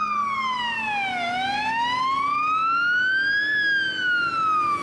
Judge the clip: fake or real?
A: real